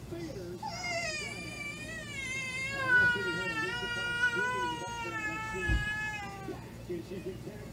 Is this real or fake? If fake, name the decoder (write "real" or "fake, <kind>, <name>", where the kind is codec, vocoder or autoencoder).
real